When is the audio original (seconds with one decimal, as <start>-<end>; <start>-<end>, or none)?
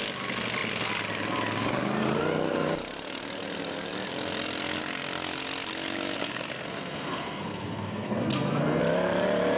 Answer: 0.0-6.5; 8.8-9.6